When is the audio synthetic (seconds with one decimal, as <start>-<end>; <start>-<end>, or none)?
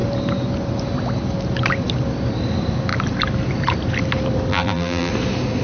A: 4.5-5.1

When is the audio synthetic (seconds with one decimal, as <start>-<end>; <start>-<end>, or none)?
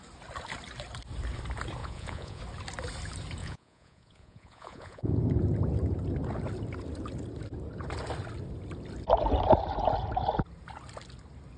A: 1.8-2.4; 3.4-5.2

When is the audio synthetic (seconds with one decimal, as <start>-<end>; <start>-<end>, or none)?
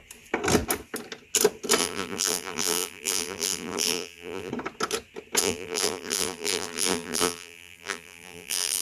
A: 1.8-4.5; 5.4-8.8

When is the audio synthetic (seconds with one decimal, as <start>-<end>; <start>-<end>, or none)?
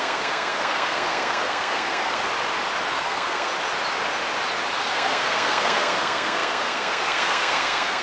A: 0.0-2.3; 2.9-3.5; 4.8-8.0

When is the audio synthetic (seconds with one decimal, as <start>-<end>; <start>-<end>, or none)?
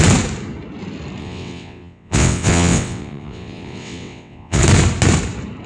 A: 1.2-4.6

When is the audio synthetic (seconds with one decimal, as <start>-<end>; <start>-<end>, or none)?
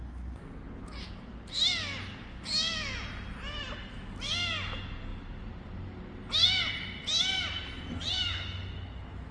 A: 5.1-5.6; 6.2-6.7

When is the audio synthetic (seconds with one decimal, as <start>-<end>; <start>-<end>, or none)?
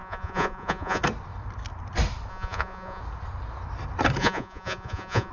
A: 0.0-1.0; 2.3-3.0; 4.2-5.3